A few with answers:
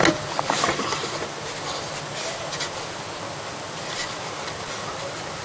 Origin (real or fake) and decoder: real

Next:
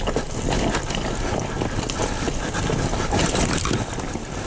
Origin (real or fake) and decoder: real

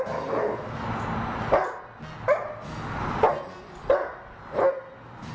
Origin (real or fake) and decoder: real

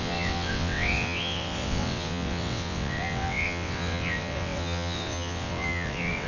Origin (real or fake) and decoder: fake, vocoder, WaveNeXt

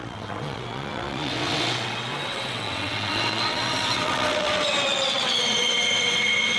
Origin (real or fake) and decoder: fake, vocoder, WaveNeXt